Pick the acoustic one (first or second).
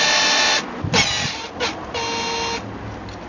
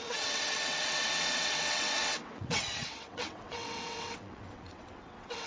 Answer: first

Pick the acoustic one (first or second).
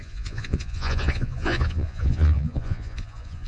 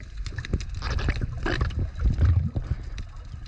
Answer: second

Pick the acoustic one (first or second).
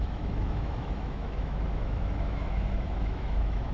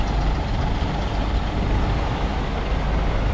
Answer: second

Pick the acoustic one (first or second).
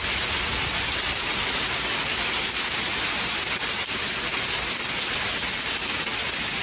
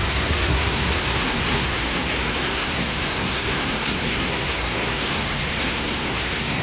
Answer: first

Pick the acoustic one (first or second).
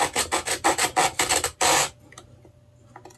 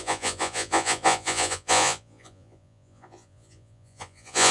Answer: first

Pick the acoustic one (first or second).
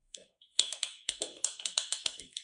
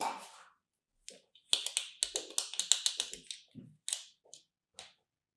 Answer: second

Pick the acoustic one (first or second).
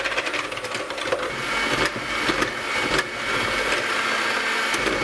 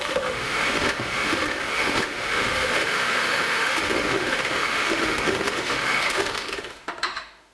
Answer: first